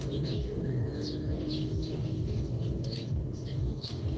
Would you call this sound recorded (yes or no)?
no